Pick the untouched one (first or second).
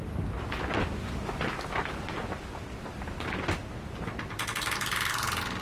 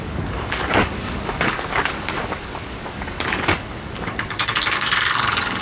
first